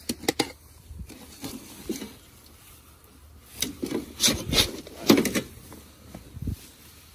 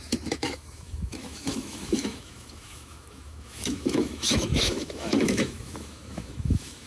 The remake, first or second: second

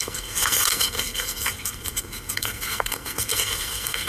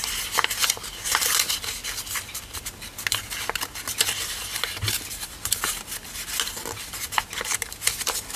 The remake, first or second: first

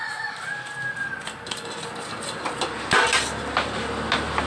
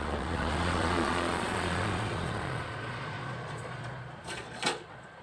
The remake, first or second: second